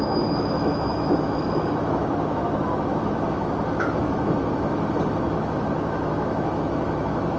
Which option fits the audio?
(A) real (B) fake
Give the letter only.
B